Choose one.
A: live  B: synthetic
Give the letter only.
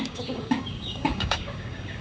B